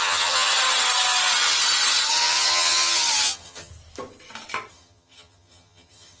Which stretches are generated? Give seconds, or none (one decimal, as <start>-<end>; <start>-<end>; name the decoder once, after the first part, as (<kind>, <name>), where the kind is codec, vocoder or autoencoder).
0.0-0.5 (vocoder, HiFi-GAN); 2.1-3.7; 4.7-6.2

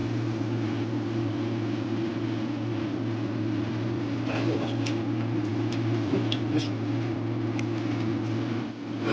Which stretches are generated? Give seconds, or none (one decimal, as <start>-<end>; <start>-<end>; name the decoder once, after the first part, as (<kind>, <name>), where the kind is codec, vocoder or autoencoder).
5.5-6.1 (vocoder, BigVGAN v2)

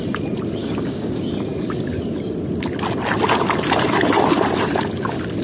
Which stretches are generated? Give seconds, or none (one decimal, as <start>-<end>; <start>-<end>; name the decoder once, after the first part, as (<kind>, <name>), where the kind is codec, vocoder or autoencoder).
0.6-1.1 (codec, DAC)

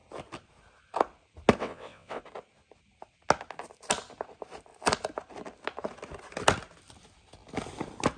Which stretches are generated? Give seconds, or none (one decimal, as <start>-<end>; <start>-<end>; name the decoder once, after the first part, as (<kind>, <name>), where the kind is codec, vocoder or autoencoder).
1.6-2.2 (vocoder, WaveNeXt)